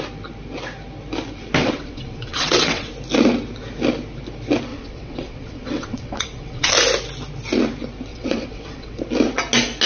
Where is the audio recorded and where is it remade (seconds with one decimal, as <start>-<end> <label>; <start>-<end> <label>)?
0.0-1.6 recorded; 1.6-2.9 remade; 2.9-4.7 recorded; 4.7-6.7 remade; 6.7-8.1 recorded; 8.1-9.0 remade; 9.0-9.9 recorded